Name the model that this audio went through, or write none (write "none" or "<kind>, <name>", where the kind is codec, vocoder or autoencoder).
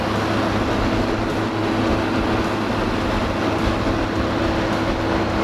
none